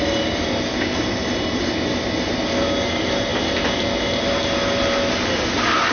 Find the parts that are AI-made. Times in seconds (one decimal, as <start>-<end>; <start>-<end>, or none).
none